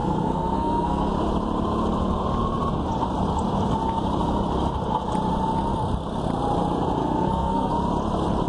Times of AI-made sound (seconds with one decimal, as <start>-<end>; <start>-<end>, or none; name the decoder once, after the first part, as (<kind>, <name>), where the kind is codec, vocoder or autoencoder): 0.0-1.1 (codec, SNAC); 7.0-7.7